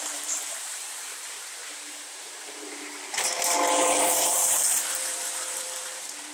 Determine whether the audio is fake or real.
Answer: fake